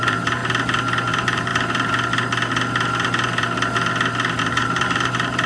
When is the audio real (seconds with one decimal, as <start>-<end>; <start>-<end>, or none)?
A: 0.4-1.1; 1.5-4.5